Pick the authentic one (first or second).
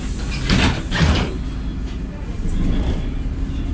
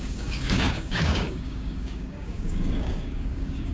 first